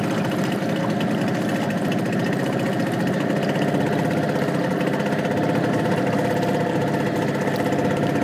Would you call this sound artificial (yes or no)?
no